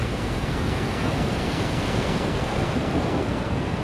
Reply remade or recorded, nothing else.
remade